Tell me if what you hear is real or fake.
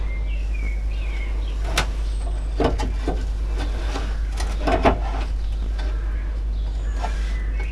real